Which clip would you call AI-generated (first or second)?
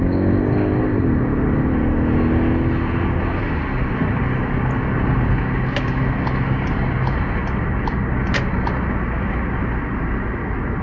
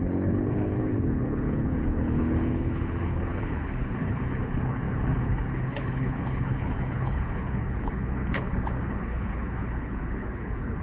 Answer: second